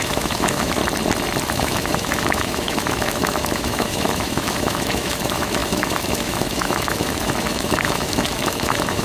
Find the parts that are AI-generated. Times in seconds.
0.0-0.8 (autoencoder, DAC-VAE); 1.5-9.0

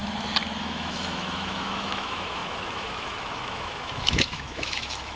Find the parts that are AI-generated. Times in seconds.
0.6-5.2 (autoencoder, DAC-VAE)